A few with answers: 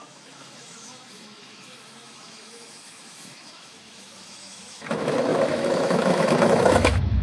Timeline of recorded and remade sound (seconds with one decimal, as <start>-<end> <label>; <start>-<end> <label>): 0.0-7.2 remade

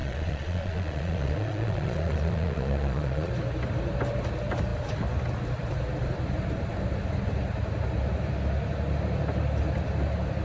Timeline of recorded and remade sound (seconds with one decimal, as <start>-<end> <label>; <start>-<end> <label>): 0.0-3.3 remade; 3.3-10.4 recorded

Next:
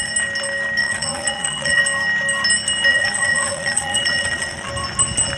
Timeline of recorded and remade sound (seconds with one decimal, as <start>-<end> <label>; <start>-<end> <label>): 0.0-0.8 recorded; 0.8-1.8 remade; 1.8-2.9 recorded; 2.9-4.7 remade; 4.7-5.4 recorded

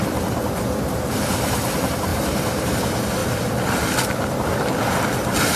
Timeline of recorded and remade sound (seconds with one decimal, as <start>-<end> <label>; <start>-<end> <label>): 0.0-2.1 recorded; 2.1-2.8 remade; 2.8-5.6 recorded

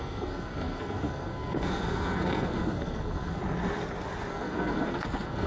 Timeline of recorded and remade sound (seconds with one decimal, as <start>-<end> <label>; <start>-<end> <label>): 0.0-3.4 remade; 3.4-4.3 recorded; 4.3-5.5 remade

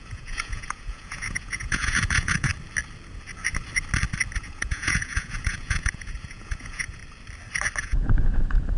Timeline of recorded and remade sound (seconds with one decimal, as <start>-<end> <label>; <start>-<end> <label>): 0.0-2.5 remade; 2.5-4.4 recorded; 4.4-7.0 remade; 7.0-7.8 recorded; 7.8-8.8 remade